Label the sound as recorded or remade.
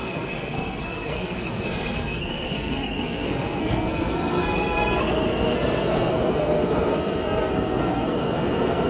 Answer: remade